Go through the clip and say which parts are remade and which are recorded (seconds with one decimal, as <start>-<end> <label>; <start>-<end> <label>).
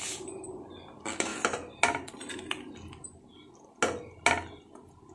0.0-5.1 recorded